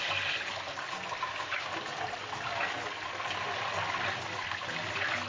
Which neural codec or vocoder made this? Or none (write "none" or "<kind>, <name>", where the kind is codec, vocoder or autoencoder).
none